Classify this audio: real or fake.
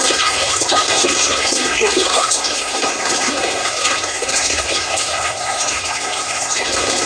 fake